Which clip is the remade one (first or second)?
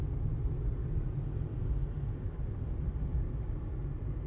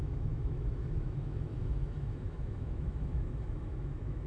second